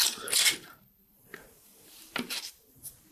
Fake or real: fake